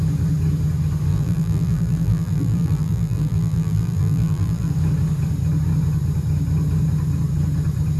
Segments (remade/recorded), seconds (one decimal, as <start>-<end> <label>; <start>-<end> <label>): 0.0-1.1 recorded; 1.1-4.7 remade; 4.7-8.0 recorded

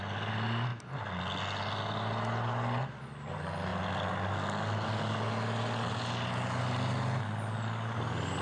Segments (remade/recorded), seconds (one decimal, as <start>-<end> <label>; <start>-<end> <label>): 0.0-8.4 recorded

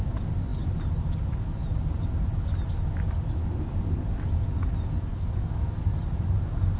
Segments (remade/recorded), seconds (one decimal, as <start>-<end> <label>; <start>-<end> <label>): 0.0-5.1 recorded; 5.1-5.6 remade; 5.6-6.8 recorded